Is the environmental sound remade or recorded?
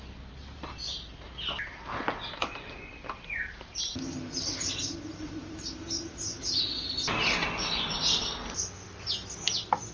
recorded